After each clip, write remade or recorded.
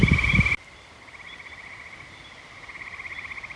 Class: recorded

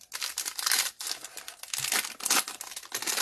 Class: recorded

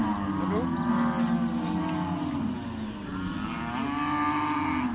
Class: recorded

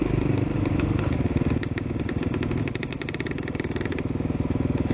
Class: recorded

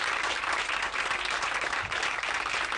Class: recorded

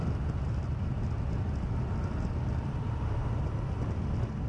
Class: recorded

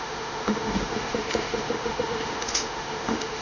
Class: remade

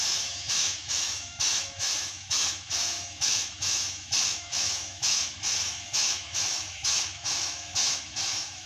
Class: remade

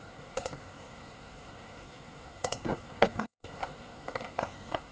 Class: remade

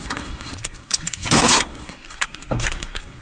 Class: remade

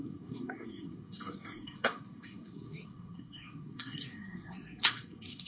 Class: remade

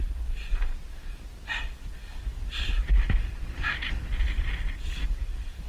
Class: recorded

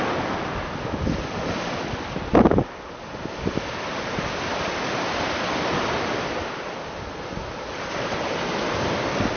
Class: recorded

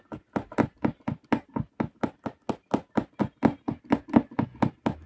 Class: recorded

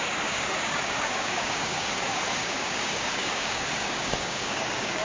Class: remade